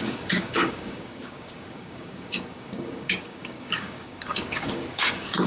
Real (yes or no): no